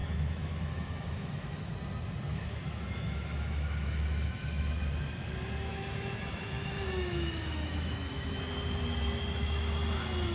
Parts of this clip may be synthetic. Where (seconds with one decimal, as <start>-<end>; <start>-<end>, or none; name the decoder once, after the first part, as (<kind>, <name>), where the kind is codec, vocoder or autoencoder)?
0.0-1.7 (autoencoder, DAC-VAE); 2.3-4.7; 5.7-8.4